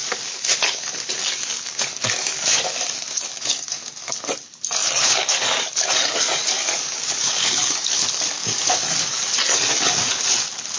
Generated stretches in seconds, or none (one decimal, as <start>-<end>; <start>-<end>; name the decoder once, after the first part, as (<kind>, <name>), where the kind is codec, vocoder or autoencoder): 0.0-4.1 (codec, DAC); 4.8-7.9; 8.3-9.2